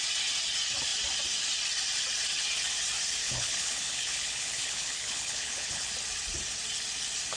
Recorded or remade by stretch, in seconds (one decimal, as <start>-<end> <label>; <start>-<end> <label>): 0.0-3.2 recorded; 3.2-5.9 remade; 5.9-7.4 recorded